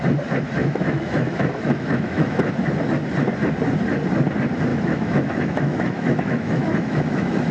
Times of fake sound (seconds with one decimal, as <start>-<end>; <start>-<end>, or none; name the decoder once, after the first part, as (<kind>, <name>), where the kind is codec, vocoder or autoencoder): 0.6-2.5 (autoencoder, DAC-VAE); 4.7-7.5